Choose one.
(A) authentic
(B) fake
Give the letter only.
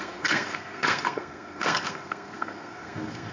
B